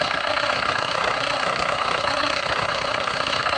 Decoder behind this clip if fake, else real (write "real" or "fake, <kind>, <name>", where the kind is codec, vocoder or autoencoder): fake, codec, SNAC